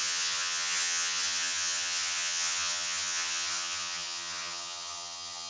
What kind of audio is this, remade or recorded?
remade